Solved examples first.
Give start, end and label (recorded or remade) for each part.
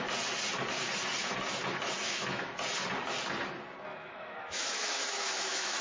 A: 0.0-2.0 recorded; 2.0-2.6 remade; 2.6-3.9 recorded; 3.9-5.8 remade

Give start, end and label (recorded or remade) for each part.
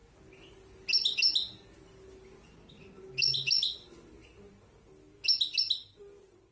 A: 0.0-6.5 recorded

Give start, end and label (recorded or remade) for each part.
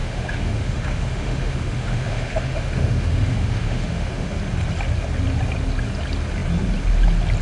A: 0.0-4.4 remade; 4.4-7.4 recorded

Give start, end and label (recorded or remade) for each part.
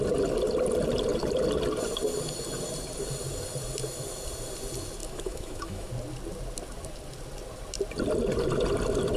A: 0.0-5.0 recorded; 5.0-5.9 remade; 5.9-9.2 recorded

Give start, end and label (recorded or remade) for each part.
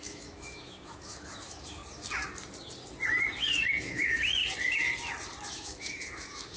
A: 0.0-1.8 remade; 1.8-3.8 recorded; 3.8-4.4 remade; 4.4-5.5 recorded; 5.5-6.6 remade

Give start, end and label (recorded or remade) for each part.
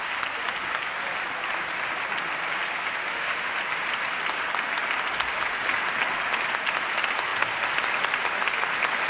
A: 0.0-3.1 recorded; 3.1-3.6 remade; 3.6-9.1 recorded